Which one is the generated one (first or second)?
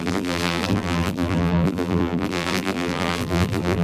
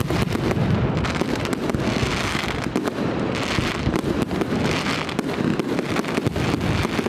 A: first